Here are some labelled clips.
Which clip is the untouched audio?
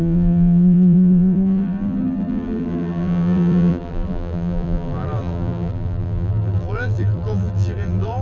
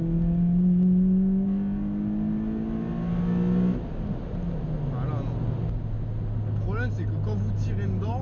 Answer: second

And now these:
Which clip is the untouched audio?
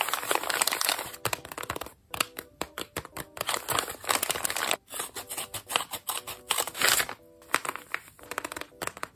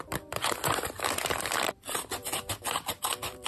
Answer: first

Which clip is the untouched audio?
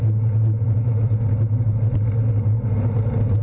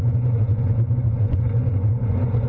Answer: first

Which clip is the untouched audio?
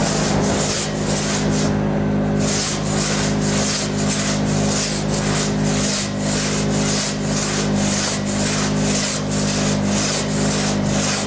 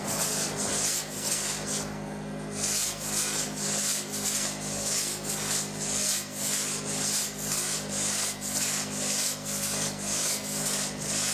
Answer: first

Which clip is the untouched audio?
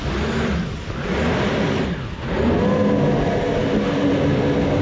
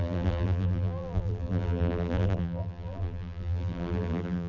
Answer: first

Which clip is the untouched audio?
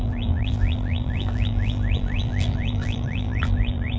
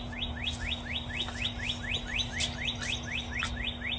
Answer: second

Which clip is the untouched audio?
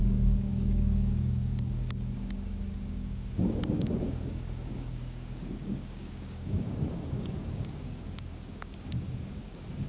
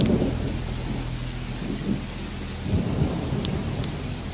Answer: second